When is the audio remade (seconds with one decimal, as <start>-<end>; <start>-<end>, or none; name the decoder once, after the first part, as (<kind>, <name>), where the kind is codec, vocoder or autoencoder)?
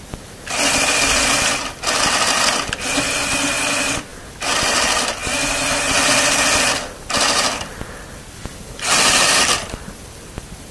none